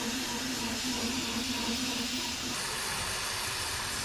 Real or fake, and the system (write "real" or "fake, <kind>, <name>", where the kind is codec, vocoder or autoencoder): real